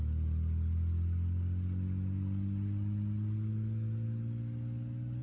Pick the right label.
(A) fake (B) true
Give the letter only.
B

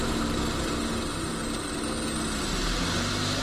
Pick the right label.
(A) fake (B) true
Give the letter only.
B